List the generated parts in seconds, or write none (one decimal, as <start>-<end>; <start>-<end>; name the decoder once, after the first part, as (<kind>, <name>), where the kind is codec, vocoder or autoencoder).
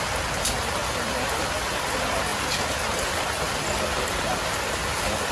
0.0-0.8 (vocoder, BigVGAN v2); 1.3-5.3